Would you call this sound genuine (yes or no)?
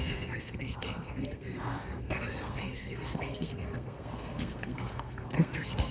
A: no